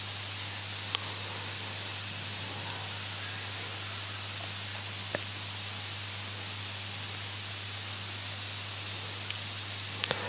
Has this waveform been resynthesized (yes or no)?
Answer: no